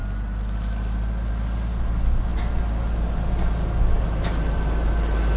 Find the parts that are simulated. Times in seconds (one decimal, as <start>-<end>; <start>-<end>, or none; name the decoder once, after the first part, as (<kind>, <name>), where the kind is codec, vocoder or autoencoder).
none